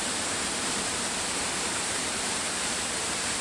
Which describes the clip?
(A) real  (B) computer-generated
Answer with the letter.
B